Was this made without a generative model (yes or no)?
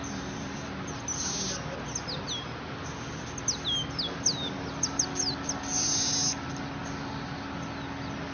yes